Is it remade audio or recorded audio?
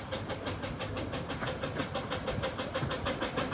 remade